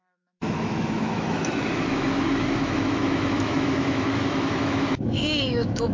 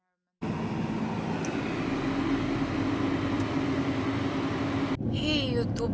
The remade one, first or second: first